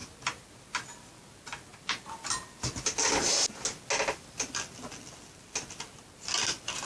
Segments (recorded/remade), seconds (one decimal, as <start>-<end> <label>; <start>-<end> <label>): 0.0-6.9 recorded